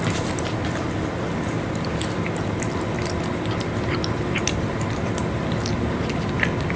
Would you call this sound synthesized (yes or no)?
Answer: no